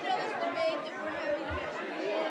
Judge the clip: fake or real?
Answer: real